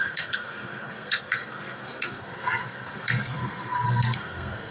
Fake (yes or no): yes